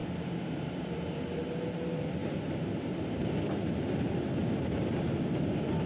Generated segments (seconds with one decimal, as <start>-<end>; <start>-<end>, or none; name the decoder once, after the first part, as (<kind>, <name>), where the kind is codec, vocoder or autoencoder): 0.0-1.0 (vocoder, BigVGAN v2); 2.2-5.1